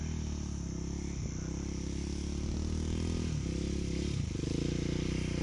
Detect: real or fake real